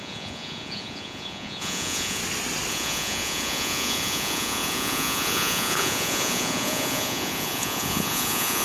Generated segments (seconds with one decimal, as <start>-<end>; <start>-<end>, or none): 0.0-2.2; 2.7-8.6